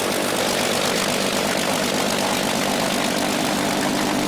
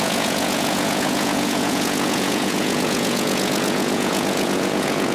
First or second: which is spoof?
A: second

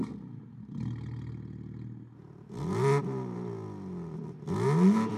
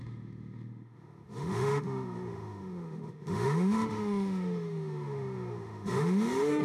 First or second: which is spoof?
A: second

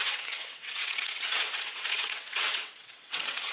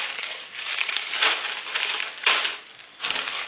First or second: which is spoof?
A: first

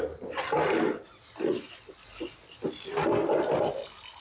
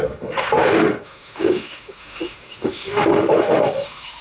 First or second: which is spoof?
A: second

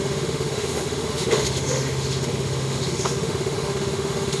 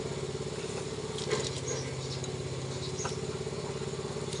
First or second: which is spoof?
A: first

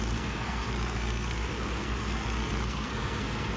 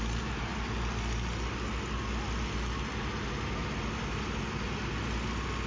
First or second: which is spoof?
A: first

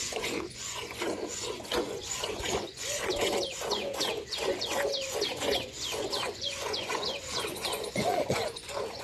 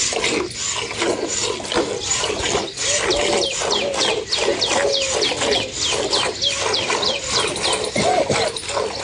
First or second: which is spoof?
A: first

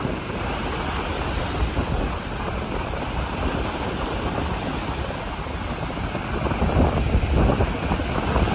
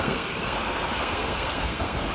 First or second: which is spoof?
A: second